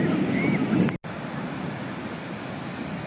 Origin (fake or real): real